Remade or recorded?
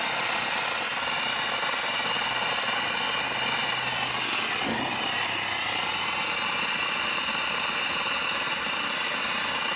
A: recorded